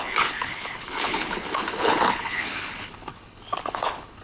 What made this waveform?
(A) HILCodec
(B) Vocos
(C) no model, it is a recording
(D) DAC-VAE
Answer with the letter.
A